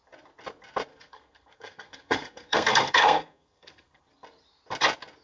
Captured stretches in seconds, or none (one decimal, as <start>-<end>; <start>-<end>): 0.0-0.9; 4.0-5.2